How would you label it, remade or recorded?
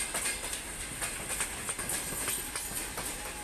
recorded